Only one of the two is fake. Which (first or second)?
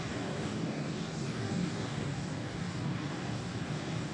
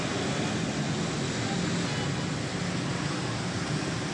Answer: first